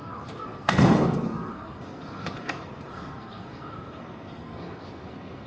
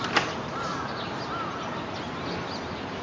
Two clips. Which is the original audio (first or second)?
second